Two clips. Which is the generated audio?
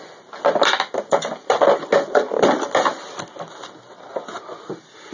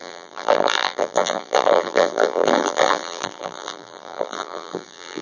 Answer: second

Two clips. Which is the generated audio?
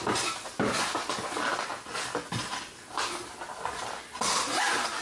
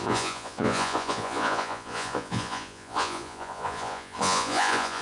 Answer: second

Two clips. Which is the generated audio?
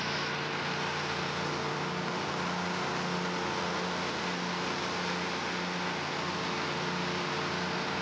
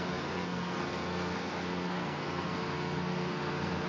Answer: second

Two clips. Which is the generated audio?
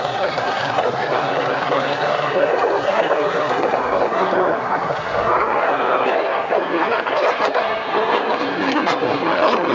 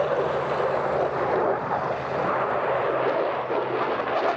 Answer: first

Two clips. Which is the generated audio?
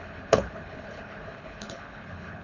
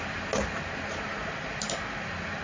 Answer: first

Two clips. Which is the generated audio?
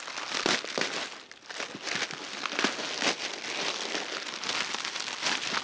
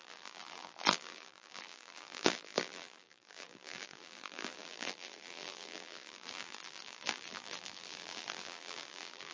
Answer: second